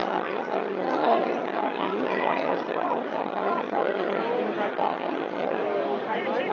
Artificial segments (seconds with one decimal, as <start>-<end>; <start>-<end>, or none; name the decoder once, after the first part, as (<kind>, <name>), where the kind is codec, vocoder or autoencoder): 0.0-4.2 (vocoder, HiFi-GAN); 4.7-5.6